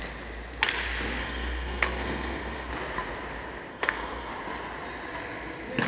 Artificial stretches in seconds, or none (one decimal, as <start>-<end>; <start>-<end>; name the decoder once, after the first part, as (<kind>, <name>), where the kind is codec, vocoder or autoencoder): 1.2-2.7 (codec, SNAC); 3.7-4.3